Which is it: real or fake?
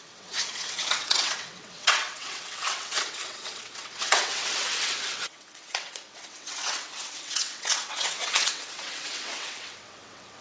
fake